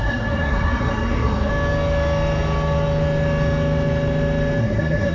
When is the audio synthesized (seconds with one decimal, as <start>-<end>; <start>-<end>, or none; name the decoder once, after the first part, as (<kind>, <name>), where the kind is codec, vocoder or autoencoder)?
0.0-1.5 (codec, SNAC); 4.6-5.1